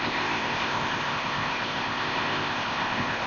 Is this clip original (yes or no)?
no